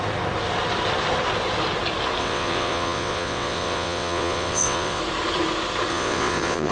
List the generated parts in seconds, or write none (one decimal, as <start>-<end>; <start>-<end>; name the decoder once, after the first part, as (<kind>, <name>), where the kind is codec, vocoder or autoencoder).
2.2-5.0 (vocoder, WaveNeXt); 5.9-6.7